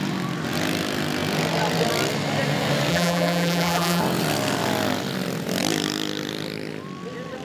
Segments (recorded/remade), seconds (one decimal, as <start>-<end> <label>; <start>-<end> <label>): 0.0-2.9 recorded; 2.9-4.0 remade; 4.0-7.4 recorded